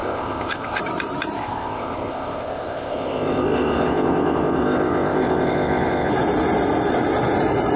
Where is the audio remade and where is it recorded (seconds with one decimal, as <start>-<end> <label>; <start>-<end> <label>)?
0.0-0.8 remade; 0.8-1.4 recorded; 1.4-6.1 remade; 6.1-7.8 recorded